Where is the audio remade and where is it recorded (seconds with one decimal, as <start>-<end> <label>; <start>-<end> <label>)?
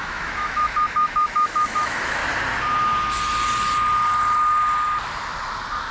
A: 0.0-2.2 remade; 2.2-5.9 recorded